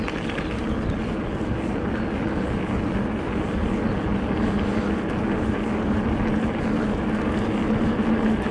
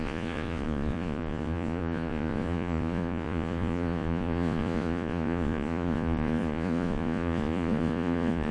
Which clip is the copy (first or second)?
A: second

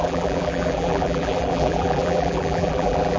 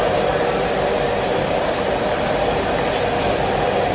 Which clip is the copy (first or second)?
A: first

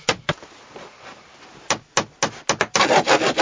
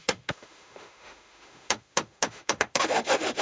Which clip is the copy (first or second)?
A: second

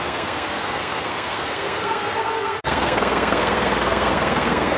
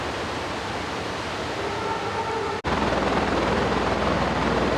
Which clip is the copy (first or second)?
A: first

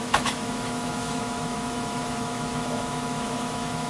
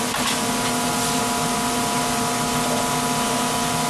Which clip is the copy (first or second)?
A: first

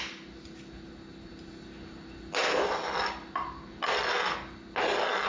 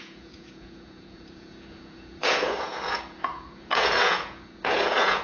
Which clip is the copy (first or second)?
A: second